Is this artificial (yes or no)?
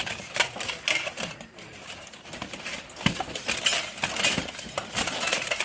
no